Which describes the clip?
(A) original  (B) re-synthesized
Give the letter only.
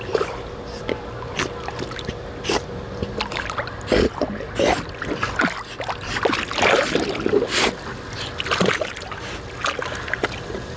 A